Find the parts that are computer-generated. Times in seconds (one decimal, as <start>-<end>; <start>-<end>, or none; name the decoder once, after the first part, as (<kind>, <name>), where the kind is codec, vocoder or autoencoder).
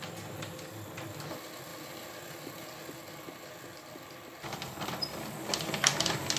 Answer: none